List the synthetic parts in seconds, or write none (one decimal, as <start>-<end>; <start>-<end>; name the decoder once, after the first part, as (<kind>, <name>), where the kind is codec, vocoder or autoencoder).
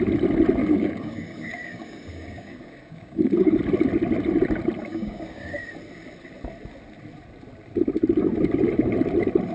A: 0.6-3.5 (codec, DAC); 4.9-5.6